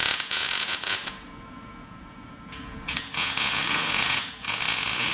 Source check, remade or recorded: remade